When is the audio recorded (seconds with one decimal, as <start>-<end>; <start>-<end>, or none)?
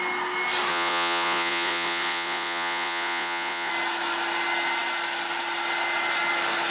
0.0-0.7; 3.7-6.7